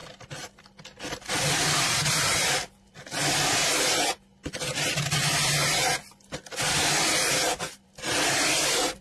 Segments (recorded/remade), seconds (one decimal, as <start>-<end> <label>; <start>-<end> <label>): 0.0-9.0 recorded